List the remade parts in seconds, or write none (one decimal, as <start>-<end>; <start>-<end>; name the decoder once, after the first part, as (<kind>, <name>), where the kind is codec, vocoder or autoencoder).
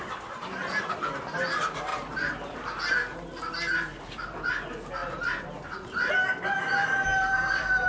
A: 1.9-2.8 (vocoder, BigVGAN v2); 3.9-4.5; 5.0-6.1; 7.1-7.9